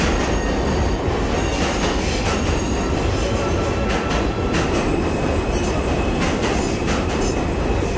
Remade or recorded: recorded